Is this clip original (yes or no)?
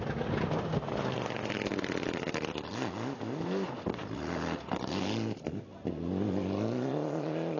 yes